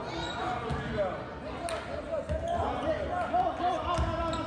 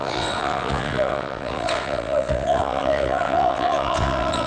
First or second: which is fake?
second